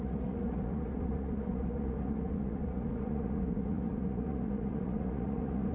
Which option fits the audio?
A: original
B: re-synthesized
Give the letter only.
B